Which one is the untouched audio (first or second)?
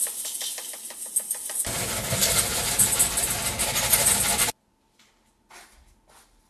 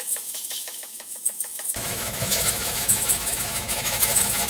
first